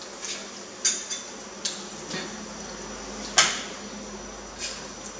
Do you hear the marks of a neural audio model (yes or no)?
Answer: no